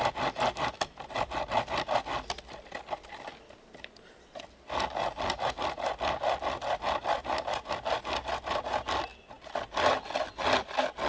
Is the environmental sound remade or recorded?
recorded